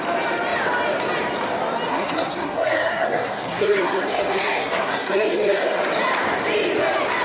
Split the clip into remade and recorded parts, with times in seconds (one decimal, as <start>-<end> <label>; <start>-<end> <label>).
0.0-1.9 recorded; 1.9-5.8 remade; 5.8-7.2 recorded

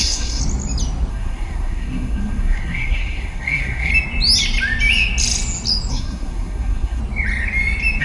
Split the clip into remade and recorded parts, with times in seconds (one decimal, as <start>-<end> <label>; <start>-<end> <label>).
0.0-0.4 remade; 0.4-1.1 recorded; 1.1-3.9 remade; 3.9-5.9 recorded; 5.9-7.0 remade; 7.0-8.0 recorded

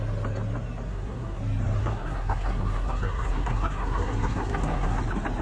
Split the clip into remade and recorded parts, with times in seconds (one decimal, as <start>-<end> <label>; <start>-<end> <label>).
0.0-0.9 recorded; 0.9-1.4 remade; 1.4-1.8 recorded; 1.8-5.0 remade; 5.0-5.4 recorded